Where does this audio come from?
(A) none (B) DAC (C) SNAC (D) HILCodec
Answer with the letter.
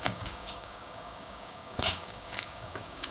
B